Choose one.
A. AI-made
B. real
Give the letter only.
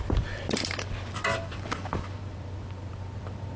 A